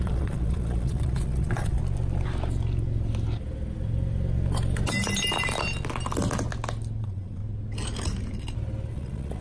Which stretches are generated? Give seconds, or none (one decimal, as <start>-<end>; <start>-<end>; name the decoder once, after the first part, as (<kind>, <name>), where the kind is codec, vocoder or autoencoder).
0.0-1.8 (vocoder, Vocos); 7.0-7.4; 8.9-9.4